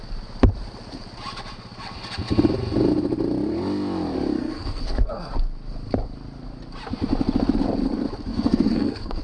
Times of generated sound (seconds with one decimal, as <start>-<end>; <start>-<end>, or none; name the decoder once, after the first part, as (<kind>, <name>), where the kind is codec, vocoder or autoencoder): 4.4-5.3 (codec, SNAC); 8.3-9.2